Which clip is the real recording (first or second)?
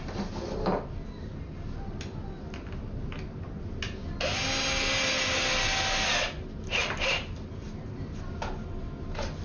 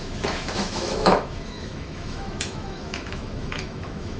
first